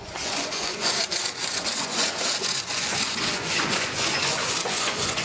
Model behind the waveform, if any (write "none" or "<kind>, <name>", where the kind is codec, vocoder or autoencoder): vocoder, Vocos